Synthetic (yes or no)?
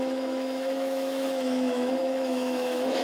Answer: yes